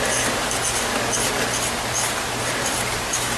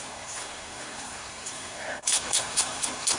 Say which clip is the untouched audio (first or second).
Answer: first